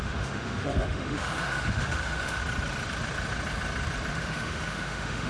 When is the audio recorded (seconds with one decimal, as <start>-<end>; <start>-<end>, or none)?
2.4-4.1

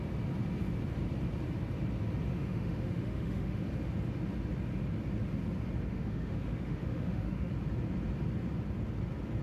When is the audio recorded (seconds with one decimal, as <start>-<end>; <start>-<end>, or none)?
0.0-2.3; 3.6-5.9; 7.5-9.4

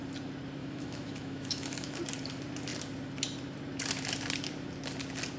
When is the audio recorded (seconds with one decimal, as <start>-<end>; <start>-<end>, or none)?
0.0-0.6; 2.0-5.4

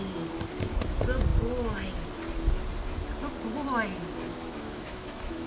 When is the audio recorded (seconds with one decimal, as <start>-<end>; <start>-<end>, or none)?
0.0-4.3

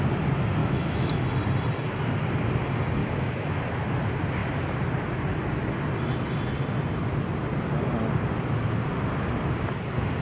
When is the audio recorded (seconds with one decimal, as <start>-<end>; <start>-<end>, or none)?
0.0-0.6; 1.2-3.0; 3.5-10.2

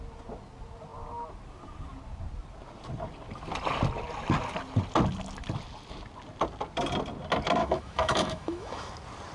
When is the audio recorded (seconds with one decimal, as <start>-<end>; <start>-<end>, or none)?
0.0-7.6; 8.9-9.3

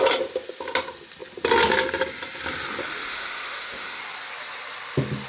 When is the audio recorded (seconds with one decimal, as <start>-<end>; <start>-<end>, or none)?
0.0-2.8; 4.0-5.3

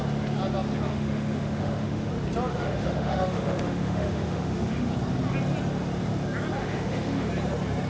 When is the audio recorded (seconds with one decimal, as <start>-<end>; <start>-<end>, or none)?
0.0-0.9; 2.1-2.5; 4.9-6.6; 7.3-7.9